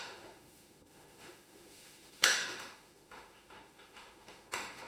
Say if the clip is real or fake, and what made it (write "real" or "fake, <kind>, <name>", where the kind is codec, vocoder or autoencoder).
fake, autoencoder, DAC-VAE